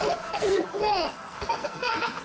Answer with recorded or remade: remade